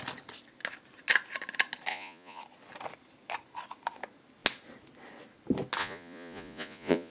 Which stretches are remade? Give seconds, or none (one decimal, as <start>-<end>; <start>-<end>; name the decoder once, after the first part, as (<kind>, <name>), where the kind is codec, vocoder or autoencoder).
1.9-2.4 (vocoder, Vocos); 5.8-7.1